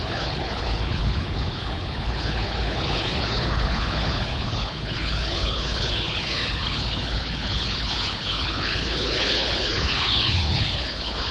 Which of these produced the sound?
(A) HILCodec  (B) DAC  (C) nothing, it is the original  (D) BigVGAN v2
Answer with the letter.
A